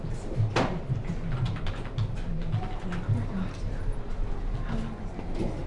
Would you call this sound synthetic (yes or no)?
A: no